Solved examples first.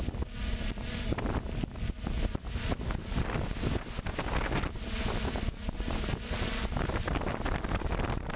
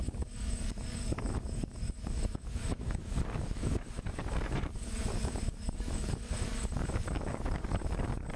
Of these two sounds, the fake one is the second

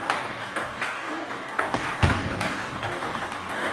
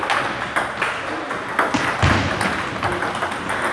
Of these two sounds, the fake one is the first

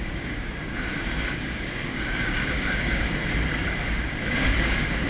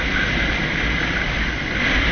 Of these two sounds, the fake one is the first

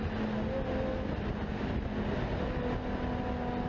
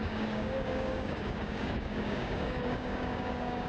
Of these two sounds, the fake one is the second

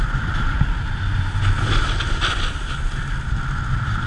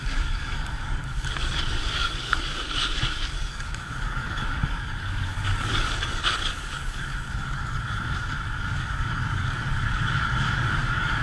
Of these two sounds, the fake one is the second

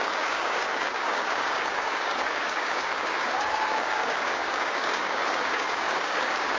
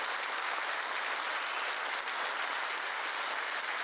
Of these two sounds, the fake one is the first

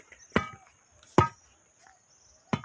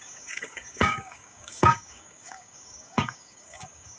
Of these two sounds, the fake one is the second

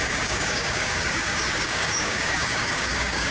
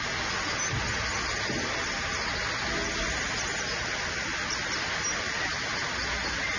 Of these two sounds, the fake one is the first